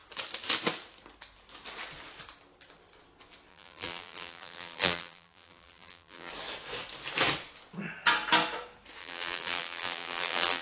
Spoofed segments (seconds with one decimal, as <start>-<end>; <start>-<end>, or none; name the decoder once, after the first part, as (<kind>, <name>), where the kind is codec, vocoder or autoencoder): 3.5-6.3 (vocoder, BigVGAN v2); 9.0-10.6